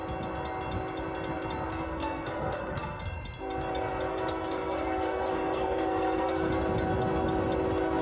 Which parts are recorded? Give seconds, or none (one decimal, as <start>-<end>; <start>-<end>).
0.0-1.7; 3.0-4.1; 6.5-8.0